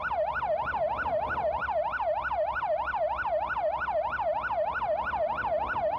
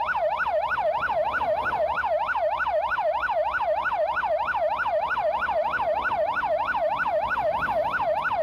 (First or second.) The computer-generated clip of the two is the second